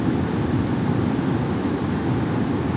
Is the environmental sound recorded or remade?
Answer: recorded